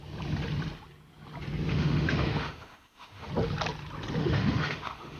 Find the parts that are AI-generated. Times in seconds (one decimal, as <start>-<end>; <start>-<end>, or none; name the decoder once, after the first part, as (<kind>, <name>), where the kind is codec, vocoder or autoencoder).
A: 1.7-3.3 (autoencoder, DAC-VAE); 4.2-5.2